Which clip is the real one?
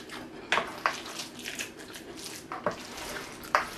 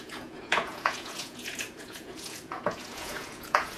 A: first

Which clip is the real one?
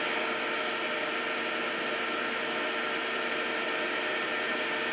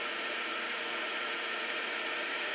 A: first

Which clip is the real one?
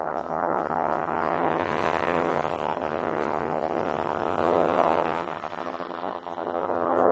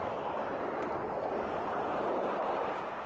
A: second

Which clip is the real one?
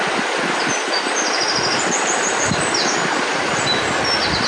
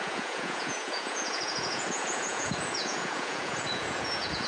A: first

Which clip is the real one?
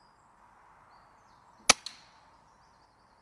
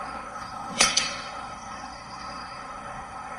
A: first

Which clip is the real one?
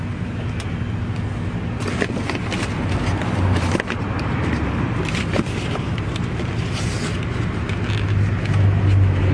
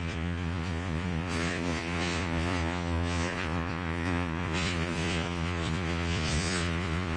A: first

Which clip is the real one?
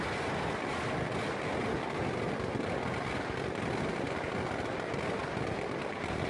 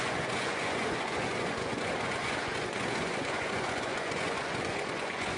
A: first